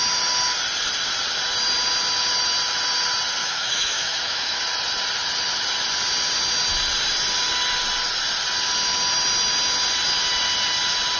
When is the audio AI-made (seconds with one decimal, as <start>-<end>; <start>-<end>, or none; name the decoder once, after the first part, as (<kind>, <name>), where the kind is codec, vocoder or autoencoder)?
3.4-4.6 (autoencoder, DAC-VAE)